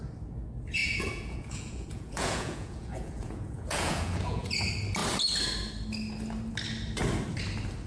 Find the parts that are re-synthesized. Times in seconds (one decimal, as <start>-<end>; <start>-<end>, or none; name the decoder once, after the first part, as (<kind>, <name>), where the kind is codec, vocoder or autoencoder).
0.8-4.5 (vocoder, Vocos)